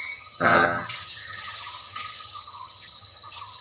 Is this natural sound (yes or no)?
no